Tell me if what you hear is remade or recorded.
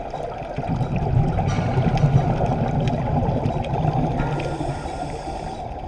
recorded